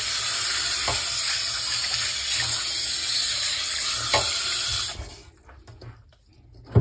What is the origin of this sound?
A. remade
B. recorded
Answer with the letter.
B